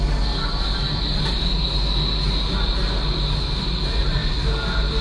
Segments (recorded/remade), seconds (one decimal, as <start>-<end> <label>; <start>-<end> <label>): 0.0-5.0 recorded